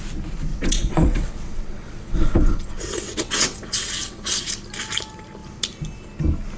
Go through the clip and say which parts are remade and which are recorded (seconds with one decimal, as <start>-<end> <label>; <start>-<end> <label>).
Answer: 0.0-0.5 recorded; 0.5-4.5 remade; 4.5-6.6 recorded